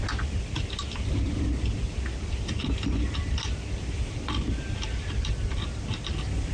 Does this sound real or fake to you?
real